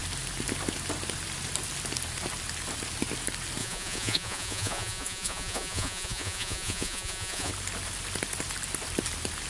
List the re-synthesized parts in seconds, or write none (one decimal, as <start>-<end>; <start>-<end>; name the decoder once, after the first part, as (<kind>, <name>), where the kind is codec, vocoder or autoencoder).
3.6-7.5 (vocoder, Vocos)